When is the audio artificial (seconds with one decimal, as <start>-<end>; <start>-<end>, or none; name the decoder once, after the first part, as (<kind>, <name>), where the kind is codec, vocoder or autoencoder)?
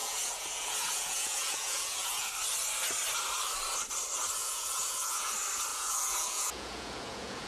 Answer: 0.0-2.3 (vocoder, Vocos); 4.4-5.3; 5.7-7.5